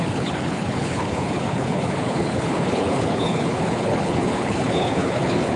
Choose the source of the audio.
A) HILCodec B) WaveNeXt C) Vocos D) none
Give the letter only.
A